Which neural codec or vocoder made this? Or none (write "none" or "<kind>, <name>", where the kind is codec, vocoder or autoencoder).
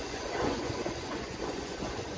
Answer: vocoder, Vocos